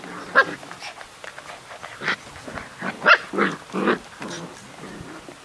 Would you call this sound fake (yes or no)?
no